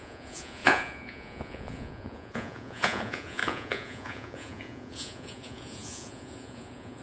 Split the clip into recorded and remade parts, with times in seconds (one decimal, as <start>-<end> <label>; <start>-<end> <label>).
0.0-7.0 remade